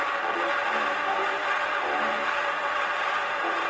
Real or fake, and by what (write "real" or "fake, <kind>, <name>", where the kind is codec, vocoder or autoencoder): real